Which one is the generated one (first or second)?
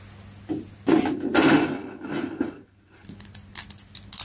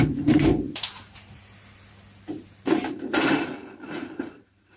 second